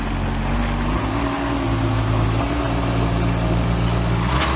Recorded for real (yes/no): yes